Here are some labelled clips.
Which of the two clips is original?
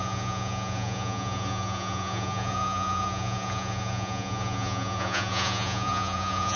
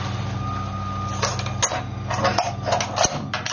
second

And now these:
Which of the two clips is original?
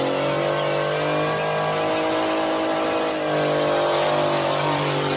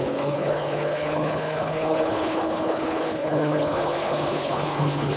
first